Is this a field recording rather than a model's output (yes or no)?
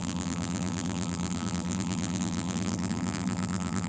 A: no